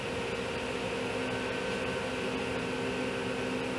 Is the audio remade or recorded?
recorded